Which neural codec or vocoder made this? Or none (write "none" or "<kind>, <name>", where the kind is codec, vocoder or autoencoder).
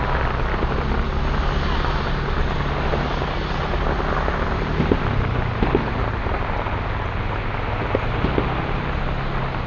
none